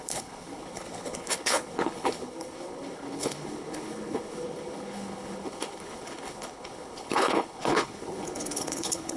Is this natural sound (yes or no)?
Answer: no